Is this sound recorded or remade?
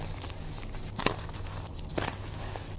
recorded